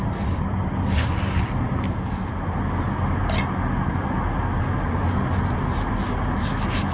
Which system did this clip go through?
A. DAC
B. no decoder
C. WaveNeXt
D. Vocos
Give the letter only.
B